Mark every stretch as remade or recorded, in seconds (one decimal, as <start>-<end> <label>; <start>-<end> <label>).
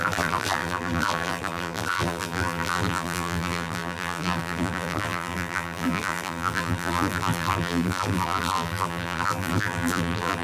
0.0-10.4 remade